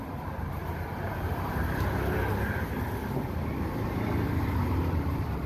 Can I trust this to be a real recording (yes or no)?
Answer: yes